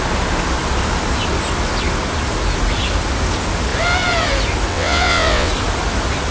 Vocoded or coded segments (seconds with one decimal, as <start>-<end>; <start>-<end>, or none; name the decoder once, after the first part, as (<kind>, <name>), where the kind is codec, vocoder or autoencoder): 4.7-5.5 (vocoder, WaveNeXt)